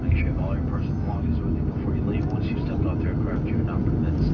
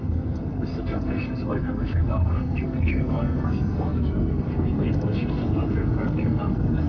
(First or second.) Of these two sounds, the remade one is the second